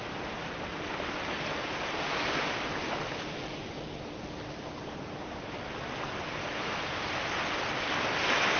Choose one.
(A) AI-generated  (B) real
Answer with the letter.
B